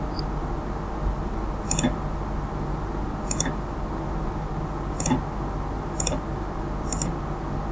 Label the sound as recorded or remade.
recorded